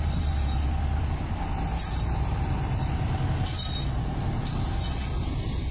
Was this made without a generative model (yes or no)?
yes